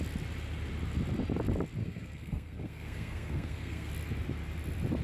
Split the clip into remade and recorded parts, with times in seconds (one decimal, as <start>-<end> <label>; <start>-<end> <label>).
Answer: 0.0-1.8 recorded; 1.8-3.9 remade; 3.9-5.0 recorded